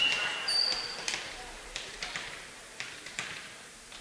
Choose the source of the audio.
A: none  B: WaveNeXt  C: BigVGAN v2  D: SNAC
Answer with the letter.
C